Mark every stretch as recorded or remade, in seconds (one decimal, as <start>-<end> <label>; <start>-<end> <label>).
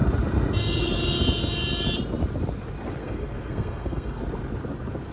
0.0-3.0 recorded; 3.0-4.2 remade; 4.2-5.1 recorded